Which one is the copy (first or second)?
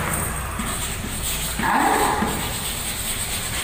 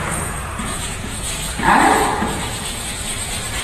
second